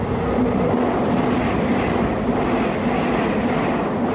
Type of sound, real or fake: real